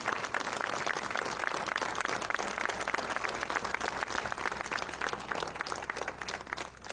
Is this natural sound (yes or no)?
yes